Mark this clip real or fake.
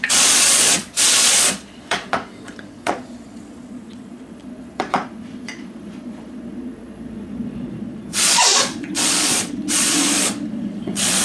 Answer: fake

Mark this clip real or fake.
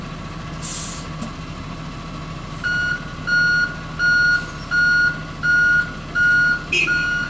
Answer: real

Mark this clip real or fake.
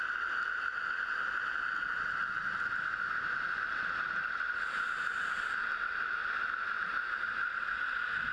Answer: real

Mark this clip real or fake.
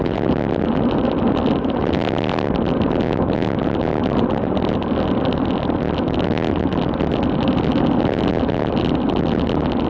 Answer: real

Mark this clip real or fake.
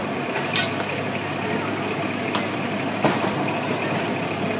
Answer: real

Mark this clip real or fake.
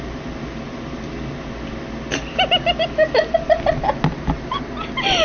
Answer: real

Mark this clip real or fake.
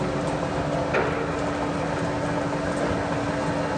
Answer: real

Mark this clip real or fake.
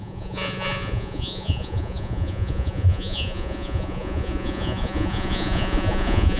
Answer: fake